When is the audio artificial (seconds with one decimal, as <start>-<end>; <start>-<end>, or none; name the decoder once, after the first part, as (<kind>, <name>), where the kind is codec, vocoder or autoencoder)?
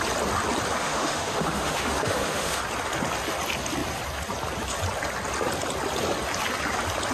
0.8-2.6 (autoencoder, DAC-VAE)